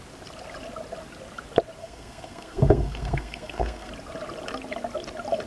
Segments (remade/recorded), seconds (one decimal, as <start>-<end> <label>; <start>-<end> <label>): 0.0-1.8 recorded; 1.8-3.9 remade; 3.9-5.5 recorded